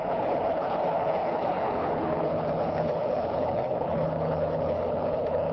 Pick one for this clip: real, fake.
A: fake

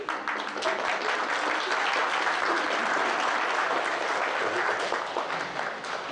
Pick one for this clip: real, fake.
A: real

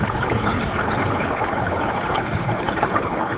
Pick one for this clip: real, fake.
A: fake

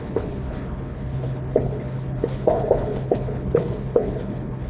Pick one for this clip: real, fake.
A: fake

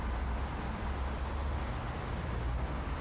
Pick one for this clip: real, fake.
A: real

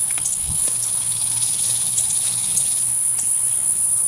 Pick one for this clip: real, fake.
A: fake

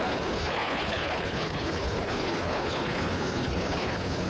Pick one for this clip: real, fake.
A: fake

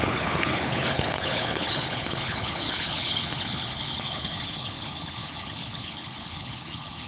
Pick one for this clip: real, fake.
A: fake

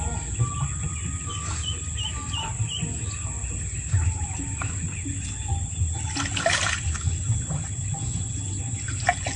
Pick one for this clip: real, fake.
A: real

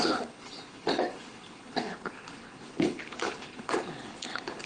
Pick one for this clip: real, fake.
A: fake